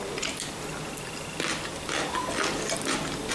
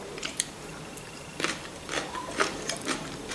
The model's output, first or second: second